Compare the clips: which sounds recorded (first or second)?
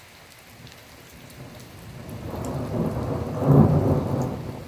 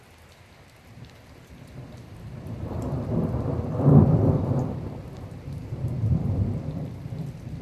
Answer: first